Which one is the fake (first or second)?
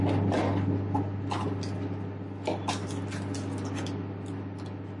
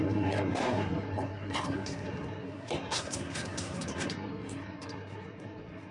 second